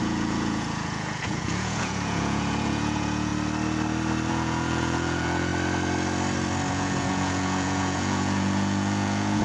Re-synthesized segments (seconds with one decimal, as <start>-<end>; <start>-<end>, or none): 0.0-3.3; 4.3-5.5; 6.7-9.4